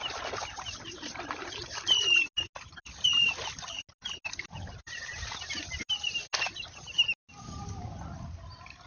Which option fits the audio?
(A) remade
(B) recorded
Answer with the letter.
B